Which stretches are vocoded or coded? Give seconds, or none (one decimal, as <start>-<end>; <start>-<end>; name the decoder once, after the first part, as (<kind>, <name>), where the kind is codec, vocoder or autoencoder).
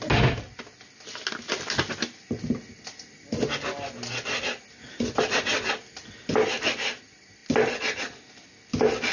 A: none